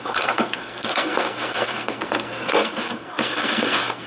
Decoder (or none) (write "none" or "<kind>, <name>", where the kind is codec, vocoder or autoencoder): codec, SNAC